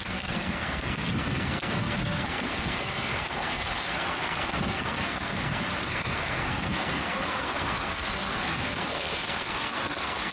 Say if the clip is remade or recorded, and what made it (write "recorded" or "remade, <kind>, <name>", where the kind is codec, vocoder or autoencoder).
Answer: remade, codec, SNAC